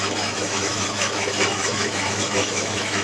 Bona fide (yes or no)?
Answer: no